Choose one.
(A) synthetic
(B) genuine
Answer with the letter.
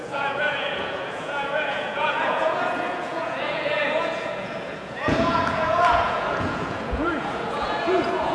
A